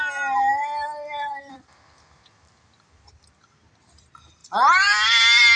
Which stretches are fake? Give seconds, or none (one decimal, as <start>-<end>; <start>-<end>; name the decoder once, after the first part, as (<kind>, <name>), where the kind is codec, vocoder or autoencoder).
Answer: 0.6-4.0 (vocoder, BigVGAN v2); 4.4-5.6